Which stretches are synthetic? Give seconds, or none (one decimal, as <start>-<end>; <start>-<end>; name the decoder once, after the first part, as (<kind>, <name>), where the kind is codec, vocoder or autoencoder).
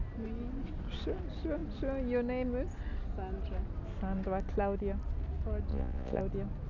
5.7-6.2 (vocoder, Vocos)